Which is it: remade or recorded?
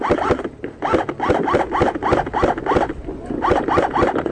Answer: recorded